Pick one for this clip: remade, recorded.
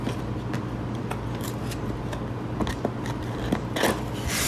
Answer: recorded